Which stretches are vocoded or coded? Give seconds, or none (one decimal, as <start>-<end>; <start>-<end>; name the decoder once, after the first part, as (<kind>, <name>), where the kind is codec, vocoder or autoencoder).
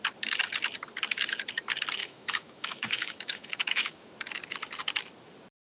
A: 2.0-4.1 (autoencoder, DAC-VAE)